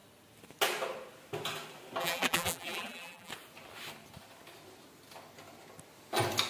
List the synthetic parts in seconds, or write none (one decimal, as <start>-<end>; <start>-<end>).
2.0-3.3